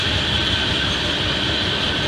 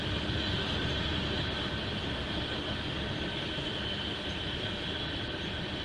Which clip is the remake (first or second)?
first